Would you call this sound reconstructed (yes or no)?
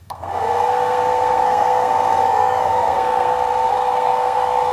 yes